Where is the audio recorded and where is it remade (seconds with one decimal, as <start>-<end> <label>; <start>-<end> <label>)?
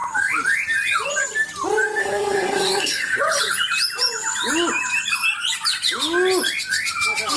0.0-2.0 recorded; 2.0-3.2 remade; 3.2-7.4 recorded